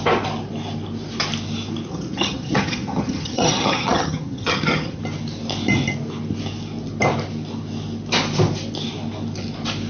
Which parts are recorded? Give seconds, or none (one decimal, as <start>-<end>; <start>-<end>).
0.0-1.9; 5.0-9.9